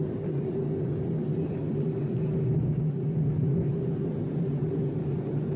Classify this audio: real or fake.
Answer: real